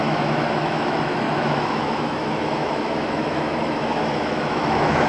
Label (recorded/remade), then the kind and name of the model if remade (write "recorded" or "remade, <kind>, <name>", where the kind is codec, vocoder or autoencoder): remade, autoencoder, DAC-VAE